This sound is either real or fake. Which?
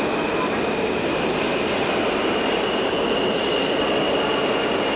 real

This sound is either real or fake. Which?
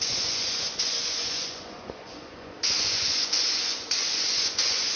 fake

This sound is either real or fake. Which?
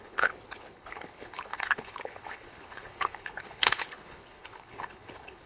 fake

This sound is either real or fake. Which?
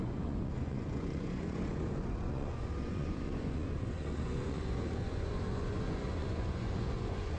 fake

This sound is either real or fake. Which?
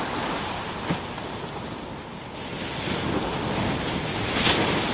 real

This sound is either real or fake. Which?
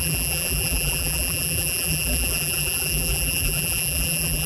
fake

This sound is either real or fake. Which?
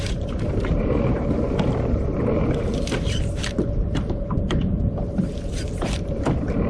fake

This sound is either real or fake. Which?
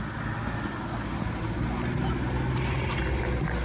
real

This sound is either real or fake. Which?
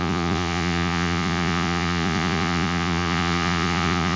fake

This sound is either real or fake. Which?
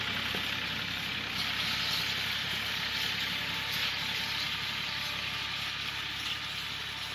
real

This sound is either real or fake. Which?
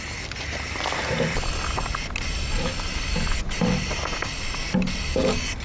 real